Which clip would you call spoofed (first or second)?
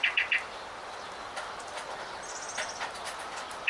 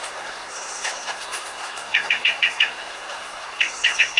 second